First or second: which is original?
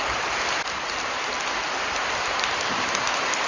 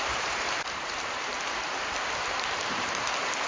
first